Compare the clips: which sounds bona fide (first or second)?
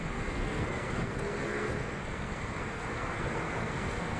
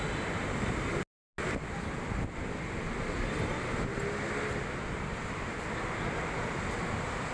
second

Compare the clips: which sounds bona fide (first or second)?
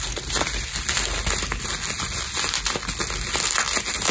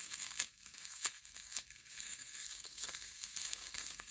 first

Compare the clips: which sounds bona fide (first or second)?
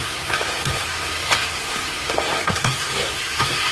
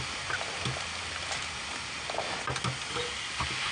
second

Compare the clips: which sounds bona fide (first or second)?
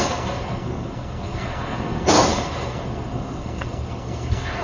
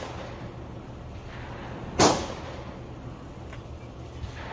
second